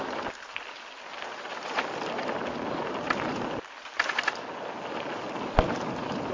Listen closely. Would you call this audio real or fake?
real